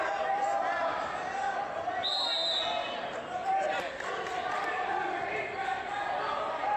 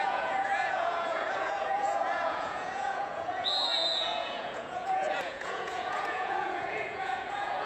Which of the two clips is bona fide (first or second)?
first